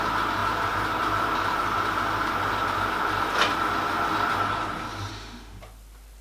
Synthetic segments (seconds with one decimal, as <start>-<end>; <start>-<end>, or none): 5.1-5.6